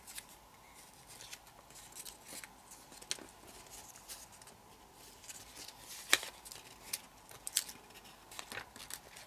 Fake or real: real